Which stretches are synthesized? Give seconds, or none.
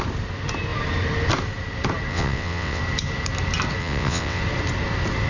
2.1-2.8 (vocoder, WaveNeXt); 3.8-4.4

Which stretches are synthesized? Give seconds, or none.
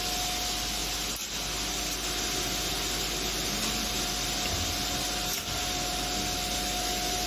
none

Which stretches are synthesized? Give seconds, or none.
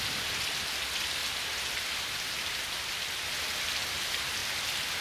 1.2-3.3 (vocoder, BigVGAN v2); 4.4-5.0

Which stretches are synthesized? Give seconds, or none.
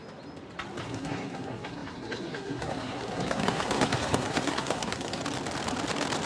0.8-5.2 (codec, SNAC)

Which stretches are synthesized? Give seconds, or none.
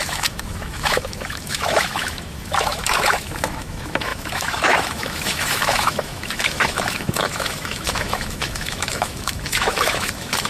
0.0-10.5 (autoencoder, DAC-VAE)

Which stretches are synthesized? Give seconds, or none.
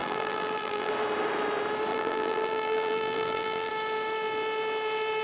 0.0-0.9 (vocoder, BigVGAN v2); 1.9-3.7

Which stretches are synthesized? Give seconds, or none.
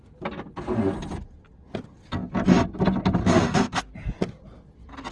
3.2-3.8 (codec, SNAC)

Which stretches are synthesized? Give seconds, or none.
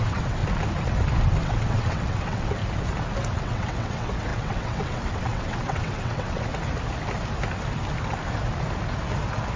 0.0-0.4 (vocoder, WaveNeXt); 1.4-2.6; 3.4-6.5